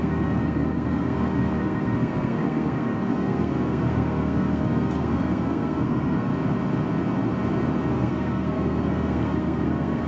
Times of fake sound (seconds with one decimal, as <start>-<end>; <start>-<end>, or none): 0.0-6.3; 7.9-10.1